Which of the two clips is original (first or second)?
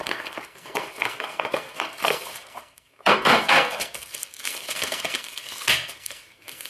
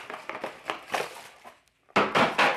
second